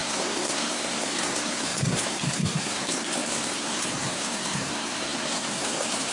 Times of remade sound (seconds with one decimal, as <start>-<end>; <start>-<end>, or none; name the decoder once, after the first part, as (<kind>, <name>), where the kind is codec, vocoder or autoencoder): 0.0-6.1 (codec, SNAC)